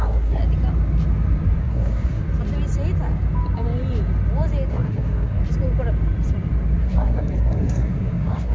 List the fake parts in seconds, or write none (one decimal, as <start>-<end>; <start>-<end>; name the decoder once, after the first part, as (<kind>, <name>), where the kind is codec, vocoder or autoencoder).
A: 0.0-0.4 (codec, SNAC); 1.6-2.2; 4.7-5.4; 6.8-8.5